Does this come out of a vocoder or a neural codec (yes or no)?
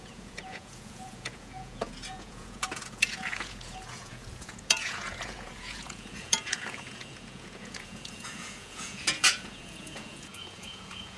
yes